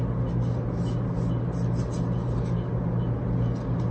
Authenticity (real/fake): real